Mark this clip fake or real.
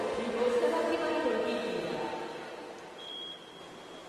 real